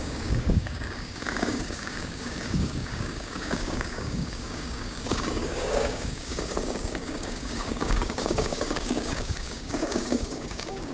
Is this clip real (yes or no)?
no